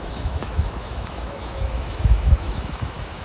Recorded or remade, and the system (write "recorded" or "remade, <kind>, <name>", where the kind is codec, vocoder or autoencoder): remade, autoencoder, DAC-VAE